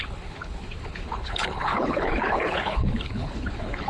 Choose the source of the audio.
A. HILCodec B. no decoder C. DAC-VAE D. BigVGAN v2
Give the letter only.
A